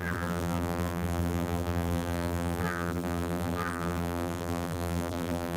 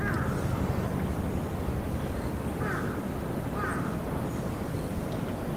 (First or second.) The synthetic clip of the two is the first